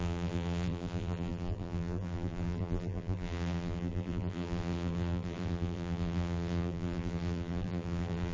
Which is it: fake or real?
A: fake